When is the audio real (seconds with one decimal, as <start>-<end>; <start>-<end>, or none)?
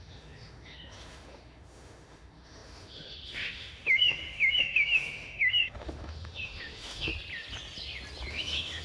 7.1-8.3